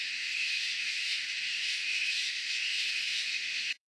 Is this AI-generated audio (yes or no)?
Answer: yes